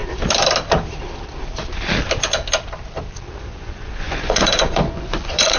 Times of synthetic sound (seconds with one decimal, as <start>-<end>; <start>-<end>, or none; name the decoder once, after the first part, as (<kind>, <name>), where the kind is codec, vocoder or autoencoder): 3.4-5.6 (vocoder, Vocos)